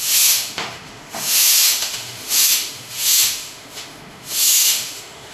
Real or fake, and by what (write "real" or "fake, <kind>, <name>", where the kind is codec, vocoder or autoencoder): fake, autoencoder, DAC-VAE